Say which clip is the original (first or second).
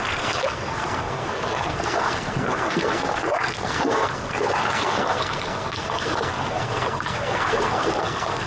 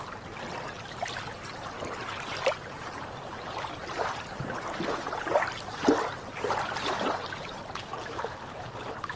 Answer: second